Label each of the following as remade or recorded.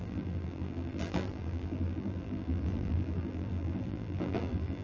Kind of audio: remade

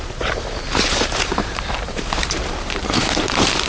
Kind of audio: remade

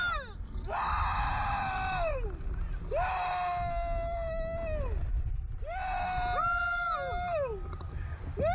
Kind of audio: recorded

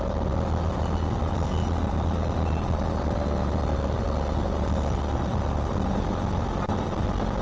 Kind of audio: recorded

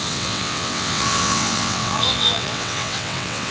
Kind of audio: remade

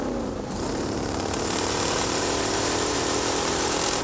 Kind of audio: remade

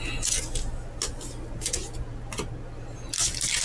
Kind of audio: recorded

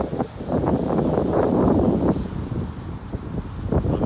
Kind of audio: recorded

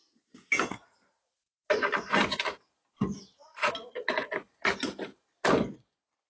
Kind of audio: recorded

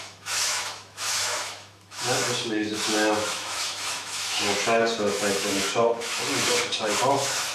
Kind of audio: remade